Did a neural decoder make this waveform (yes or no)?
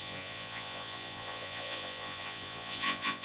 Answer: yes